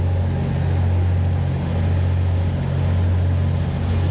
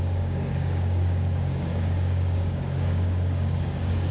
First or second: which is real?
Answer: first